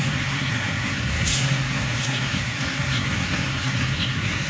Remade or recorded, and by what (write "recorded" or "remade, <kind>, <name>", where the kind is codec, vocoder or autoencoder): remade, codec, SNAC